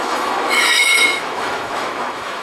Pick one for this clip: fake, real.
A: fake